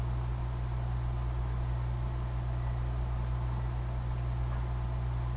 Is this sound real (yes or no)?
yes